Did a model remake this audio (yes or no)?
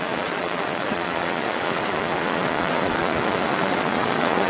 yes